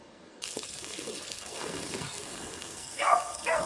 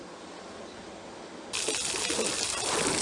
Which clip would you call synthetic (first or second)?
first